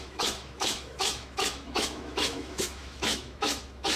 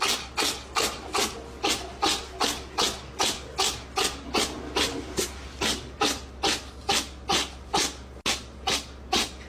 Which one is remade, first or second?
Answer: first